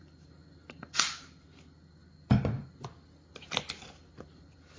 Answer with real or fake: real